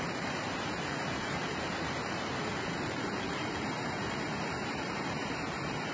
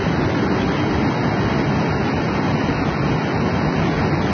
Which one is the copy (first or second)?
first